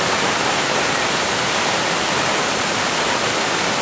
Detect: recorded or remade remade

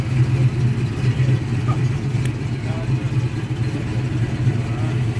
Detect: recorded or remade remade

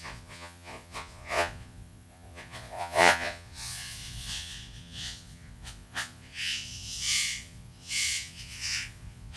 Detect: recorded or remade remade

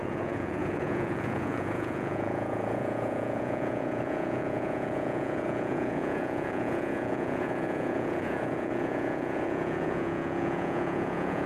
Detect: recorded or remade remade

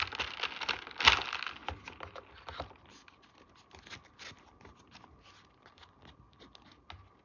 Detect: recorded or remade recorded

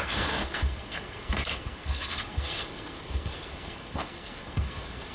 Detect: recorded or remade remade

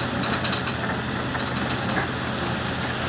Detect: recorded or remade recorded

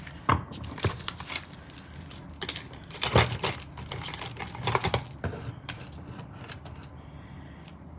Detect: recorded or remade recorded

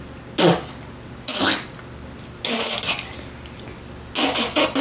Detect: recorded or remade recorded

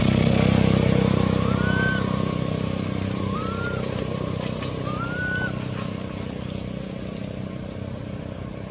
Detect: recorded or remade recorded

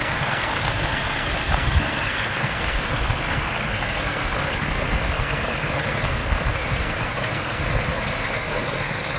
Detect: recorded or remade remade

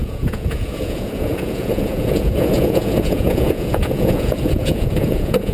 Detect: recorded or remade remade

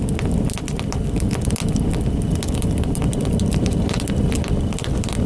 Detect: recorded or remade recorded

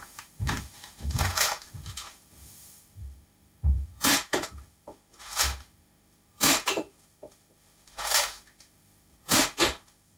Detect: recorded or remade remade